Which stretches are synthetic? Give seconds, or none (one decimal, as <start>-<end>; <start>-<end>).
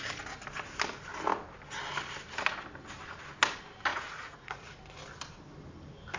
3.9-4.8